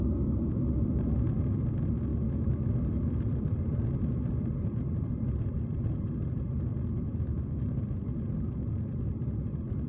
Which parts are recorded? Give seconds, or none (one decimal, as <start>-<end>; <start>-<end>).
0.0-2.1; 2.7-9.9